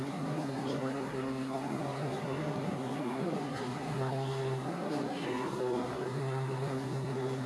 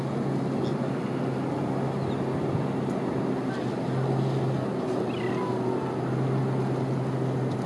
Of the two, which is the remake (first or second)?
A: first